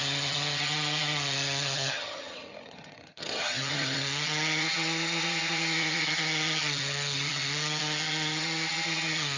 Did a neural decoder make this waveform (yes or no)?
yes